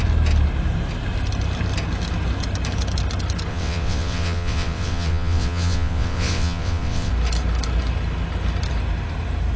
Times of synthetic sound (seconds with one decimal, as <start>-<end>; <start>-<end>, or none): 3.5-7.1